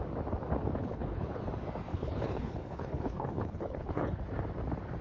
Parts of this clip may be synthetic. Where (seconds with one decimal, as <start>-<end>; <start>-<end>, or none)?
0.8-1.4; 1.9-4.2